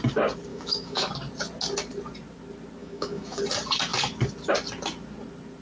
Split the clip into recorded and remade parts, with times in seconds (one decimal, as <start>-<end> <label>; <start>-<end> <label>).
0.0-0.5 recorded; 0.5-1.1 remade; 1.1-2.8 recorded; 2.8-3.4 remade; 3.4-5.6 recorded